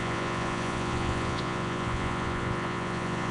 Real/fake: fake